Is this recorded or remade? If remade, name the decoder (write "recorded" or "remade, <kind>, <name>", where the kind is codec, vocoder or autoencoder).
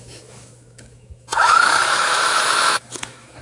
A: remade, autoencoder, DAC-VAE